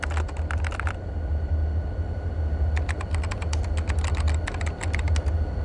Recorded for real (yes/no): yes